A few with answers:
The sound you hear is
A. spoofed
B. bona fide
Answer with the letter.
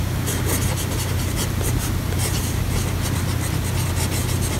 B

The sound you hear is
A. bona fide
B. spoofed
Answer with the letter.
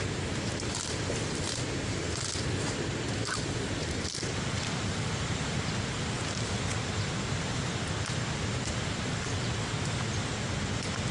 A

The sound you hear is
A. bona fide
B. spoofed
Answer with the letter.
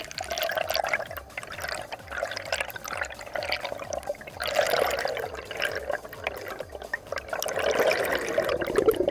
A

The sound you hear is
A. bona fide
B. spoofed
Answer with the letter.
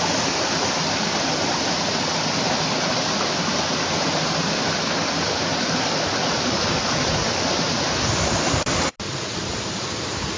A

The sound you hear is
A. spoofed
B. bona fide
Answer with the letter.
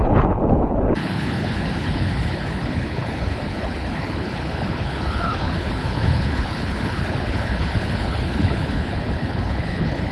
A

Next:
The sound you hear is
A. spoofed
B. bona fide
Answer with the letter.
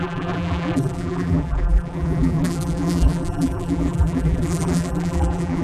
A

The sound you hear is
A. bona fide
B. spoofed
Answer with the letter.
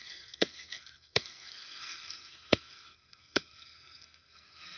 B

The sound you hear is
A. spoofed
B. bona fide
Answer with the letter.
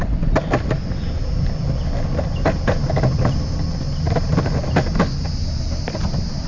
B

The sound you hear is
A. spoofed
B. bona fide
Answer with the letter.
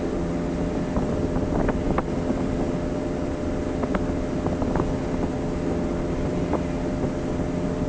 B